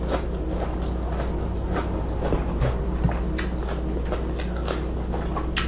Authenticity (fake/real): real